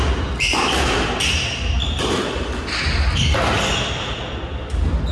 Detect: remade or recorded recorded